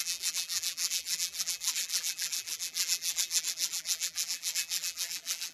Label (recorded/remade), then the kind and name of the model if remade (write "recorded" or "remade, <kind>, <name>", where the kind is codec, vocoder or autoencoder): remade, vocoder, BigVGAN v2